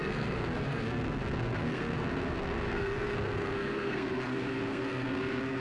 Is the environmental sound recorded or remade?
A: remade